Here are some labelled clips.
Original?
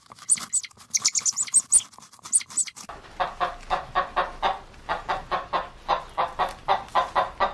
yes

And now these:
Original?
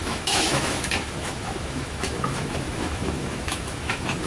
no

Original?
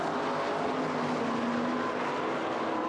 yes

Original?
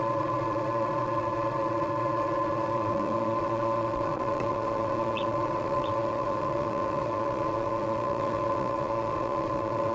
no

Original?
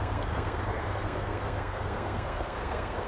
no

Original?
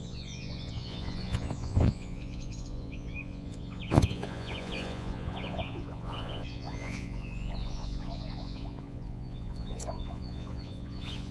no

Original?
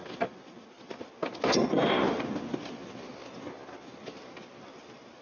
yes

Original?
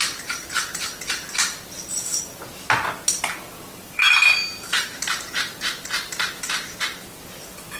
yes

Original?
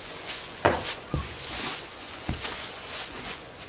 no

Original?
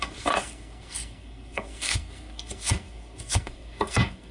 no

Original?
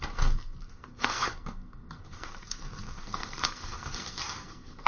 no